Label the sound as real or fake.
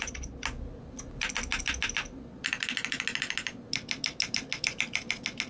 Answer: real